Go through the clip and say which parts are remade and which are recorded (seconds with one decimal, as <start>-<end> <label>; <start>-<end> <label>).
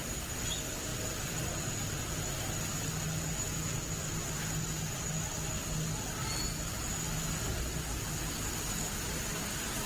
0.0-0.9 recorded; 0.9-2.1 remade; 2.1-9.9 recorded